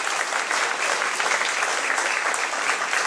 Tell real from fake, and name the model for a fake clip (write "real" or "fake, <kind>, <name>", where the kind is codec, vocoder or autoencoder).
real